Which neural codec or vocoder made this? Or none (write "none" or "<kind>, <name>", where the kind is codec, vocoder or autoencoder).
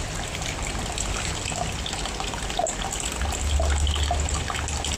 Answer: none